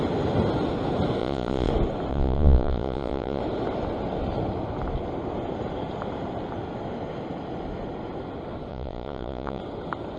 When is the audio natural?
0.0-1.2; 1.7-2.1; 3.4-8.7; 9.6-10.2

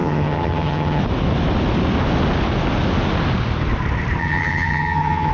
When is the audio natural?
1.0-4.2

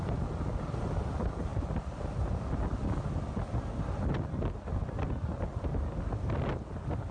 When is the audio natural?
0.0-7.1

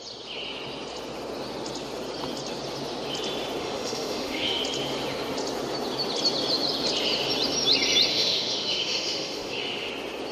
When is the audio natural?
0.0-3.6; 4.6-8.1; 9.9-10.3

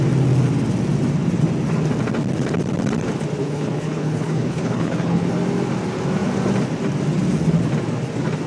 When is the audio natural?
0.0-3.4; 5.3-8.5

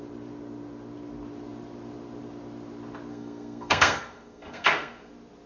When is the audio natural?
0.0-3.1; 5.1-5.5

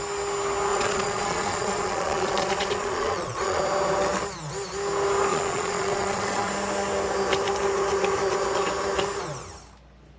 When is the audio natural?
0.0-0.7; 3.6-5.3; 6.5-10.2

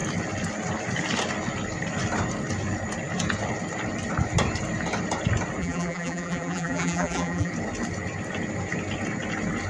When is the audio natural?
0.0-5.6; 7.5-9.7